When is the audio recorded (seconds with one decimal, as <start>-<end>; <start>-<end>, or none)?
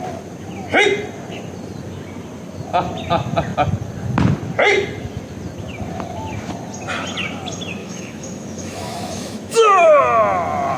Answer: 0.0-7.8; 10.0-10.8